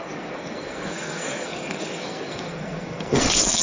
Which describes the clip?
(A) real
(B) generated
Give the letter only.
B